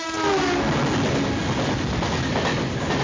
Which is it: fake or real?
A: real